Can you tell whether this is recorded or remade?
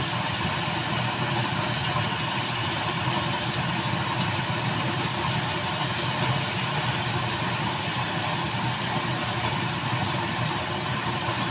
recorded